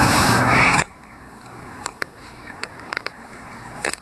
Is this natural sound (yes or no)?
no